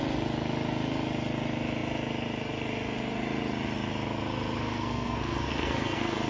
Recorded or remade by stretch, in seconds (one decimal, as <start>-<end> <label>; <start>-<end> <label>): 0.0-4.6 recorded; 4.6-6.3 remade